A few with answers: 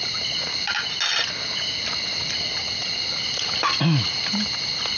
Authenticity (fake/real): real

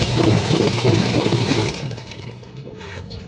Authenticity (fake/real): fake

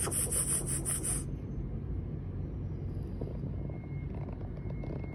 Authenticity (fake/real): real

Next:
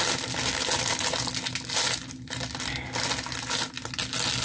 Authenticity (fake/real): real